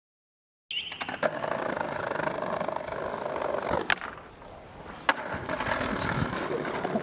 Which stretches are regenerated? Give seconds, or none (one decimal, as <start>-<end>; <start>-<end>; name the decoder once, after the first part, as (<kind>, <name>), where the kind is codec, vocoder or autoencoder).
none